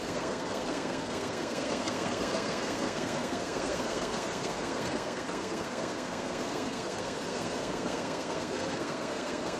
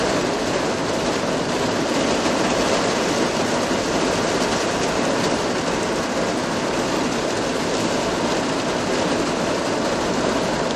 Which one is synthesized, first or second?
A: first